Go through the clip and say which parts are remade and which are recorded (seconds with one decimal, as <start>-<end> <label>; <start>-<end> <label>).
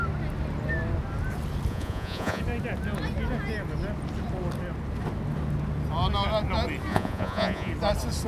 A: 0.0-1.7 recorded; 1.7-2.4 remade; 2.4-6.9 recorded; 6.9-7.7 remade; 7.7-8.3 recorded